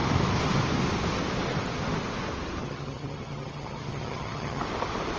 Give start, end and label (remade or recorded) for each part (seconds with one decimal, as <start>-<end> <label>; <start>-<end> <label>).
0.0-2.6 recorded; 2.6-4.6 remade; 4.6-5.2 recorded